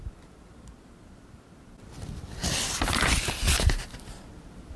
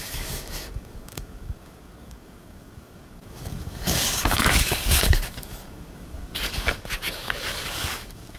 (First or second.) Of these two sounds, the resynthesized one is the second